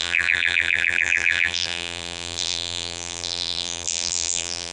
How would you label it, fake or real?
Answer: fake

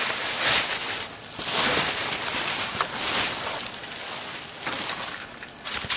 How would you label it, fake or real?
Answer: real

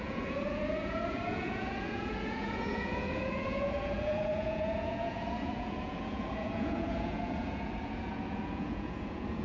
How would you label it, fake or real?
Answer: fake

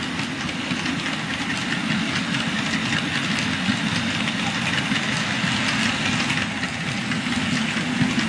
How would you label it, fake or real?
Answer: real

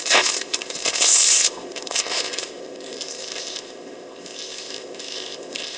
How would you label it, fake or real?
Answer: fake